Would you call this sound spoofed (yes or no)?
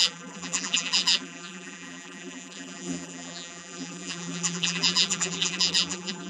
yes